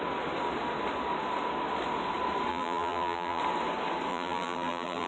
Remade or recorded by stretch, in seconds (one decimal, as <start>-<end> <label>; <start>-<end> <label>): 0.0-2.5 recorded; 2.5-3.4 remade; 3.4-4.1 recorded; 4.1-5.1 remade